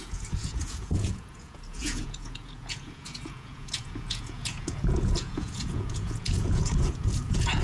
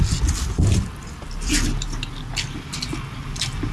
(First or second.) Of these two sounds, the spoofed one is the first